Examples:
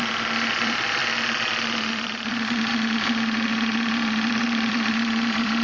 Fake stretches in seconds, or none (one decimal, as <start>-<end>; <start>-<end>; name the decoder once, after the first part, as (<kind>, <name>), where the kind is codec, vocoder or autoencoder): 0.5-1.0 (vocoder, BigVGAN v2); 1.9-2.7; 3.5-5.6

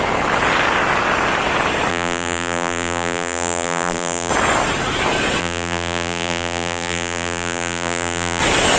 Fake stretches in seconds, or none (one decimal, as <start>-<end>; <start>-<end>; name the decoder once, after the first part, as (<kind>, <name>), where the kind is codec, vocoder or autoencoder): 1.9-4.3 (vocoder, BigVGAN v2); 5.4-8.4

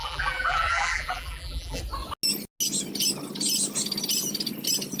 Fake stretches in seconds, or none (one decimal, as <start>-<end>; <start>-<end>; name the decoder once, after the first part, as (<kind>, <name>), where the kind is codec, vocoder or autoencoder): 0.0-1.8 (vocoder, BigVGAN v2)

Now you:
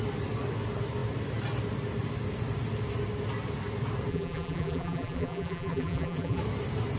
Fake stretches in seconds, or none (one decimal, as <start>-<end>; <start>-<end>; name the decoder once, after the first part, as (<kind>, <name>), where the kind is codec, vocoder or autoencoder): 4.1-6.4 (vocoder, BigVGAN v2)

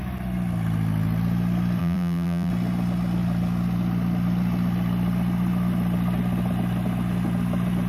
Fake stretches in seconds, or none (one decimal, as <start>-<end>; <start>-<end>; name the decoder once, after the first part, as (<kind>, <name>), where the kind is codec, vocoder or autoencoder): 1.8-2.5 (vocoder, BigVGAN v2)

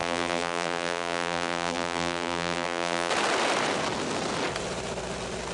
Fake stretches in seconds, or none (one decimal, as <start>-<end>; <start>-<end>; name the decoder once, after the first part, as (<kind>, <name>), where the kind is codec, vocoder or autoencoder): 0.0-3.1 (vocoder, BigVGAN v2)